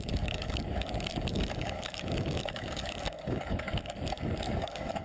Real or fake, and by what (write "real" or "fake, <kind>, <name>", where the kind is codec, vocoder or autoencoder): fake, codec, DAC